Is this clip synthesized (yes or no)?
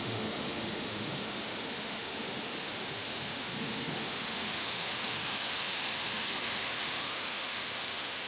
yes